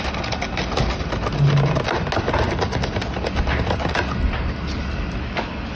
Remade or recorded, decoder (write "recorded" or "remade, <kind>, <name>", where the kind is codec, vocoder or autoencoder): recorded